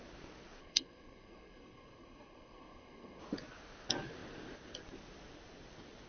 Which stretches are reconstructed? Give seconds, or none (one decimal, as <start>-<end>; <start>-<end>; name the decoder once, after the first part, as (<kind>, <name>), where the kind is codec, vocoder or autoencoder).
0.6-3.2 (codec, SNAC)